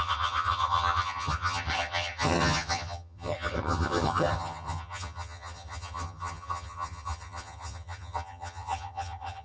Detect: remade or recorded remade